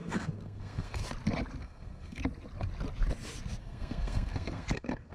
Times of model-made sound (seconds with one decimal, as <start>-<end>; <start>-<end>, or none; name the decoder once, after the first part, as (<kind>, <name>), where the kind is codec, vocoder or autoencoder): 0.0-1.0 (codec, SNAC); 1.6-2.2; 3.6-5.1